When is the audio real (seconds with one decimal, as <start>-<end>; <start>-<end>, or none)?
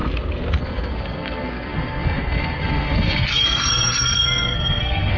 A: 0.0-0.6